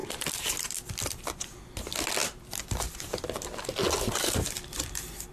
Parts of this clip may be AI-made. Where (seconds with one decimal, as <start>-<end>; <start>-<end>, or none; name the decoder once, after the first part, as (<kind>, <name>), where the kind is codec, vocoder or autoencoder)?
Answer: none